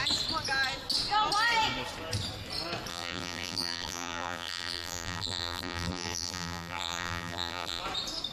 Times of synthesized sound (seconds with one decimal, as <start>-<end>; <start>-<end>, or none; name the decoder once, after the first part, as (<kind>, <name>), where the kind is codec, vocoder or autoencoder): 2.9-7.8 (vocoder, BigVGAN v2)

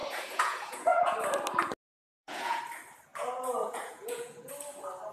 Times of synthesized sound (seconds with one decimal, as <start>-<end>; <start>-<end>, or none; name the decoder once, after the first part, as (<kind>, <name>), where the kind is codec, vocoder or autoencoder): 0.0-1.1 (vocoder, Vocos); 2.0-2.6; 3.1-4.5

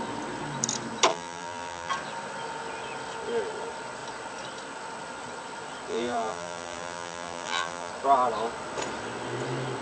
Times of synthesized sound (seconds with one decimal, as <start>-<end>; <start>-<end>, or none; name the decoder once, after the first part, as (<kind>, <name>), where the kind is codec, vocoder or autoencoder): 1.1-1.9 (vocoder, BigVGAN v2); 5.9-7.9